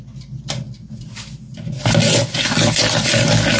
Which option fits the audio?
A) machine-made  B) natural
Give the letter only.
B